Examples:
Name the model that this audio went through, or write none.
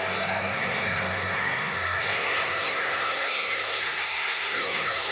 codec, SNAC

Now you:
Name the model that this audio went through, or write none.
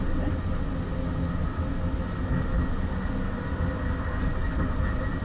none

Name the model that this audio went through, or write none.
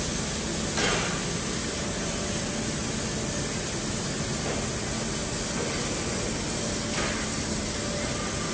none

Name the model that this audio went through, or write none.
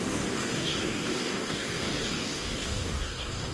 codec, DAC